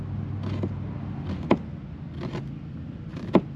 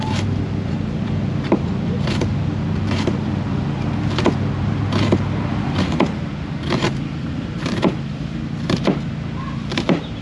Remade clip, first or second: second